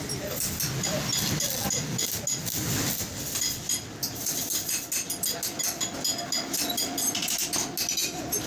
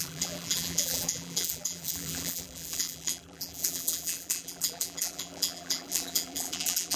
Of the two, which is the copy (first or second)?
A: second